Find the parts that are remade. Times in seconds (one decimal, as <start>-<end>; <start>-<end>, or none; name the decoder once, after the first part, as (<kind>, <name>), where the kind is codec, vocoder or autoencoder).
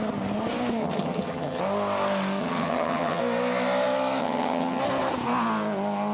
0.8-1.6 (vocoder, HiFi-GAN); 2.4-3.2; 4.2-4.8